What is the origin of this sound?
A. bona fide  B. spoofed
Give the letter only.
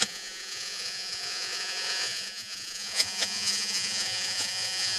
B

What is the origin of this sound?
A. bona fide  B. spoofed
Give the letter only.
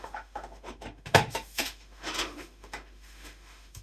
B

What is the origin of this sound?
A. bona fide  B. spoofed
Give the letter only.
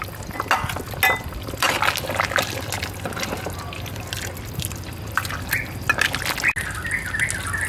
A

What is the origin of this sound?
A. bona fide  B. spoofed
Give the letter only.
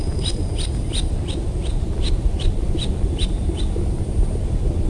A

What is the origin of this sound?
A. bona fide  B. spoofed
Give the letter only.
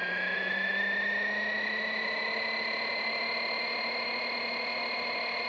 A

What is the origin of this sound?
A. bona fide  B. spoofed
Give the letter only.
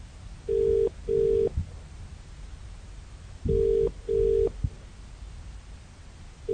A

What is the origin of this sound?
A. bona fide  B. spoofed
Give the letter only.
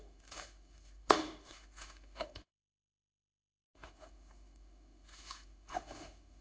B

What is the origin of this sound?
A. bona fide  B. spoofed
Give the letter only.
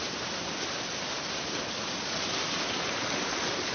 A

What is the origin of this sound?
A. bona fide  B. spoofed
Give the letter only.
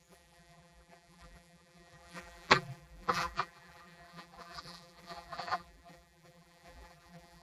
B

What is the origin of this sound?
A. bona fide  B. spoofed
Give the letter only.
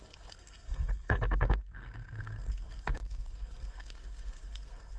B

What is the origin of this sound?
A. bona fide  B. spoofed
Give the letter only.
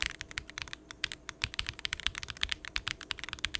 A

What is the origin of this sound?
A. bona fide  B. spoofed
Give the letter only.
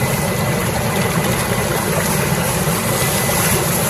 A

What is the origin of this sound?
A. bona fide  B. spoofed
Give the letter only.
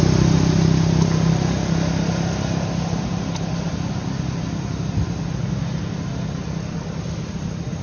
A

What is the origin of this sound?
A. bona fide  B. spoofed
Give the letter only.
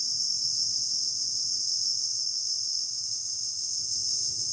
B